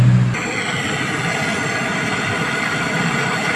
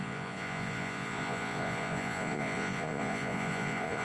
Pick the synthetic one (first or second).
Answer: second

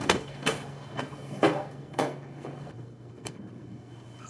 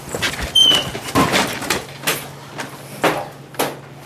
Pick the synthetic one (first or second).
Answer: first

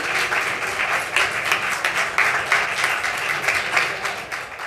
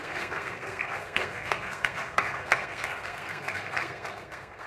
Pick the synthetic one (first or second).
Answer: second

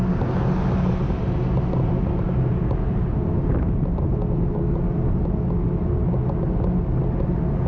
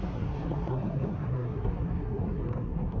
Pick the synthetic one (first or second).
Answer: second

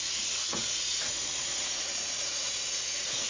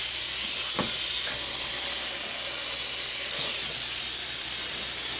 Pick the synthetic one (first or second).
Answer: first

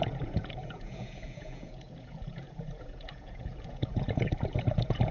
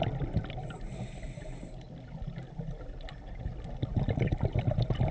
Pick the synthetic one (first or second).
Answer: first